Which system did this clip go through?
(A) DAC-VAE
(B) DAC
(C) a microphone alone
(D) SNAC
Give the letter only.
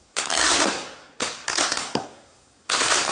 D